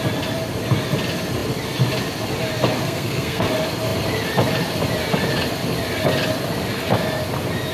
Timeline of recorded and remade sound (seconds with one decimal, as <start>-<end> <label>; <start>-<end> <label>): 0.0-2.8 recorded; 2.8-3.5 remade; 3.5-7.7 recorded